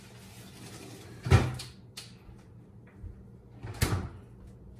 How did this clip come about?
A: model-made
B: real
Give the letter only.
B